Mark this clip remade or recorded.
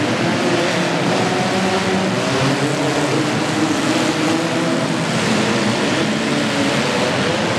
recorded